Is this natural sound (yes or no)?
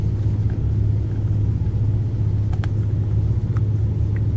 yes